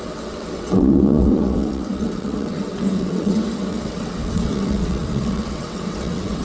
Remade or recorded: remade